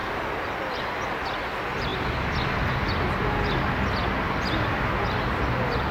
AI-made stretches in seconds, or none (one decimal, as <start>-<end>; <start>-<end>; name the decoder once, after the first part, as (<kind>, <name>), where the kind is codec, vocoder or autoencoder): none